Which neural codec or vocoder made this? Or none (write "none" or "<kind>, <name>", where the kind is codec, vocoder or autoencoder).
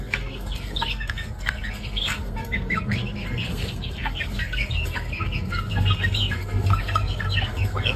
codec, SNAC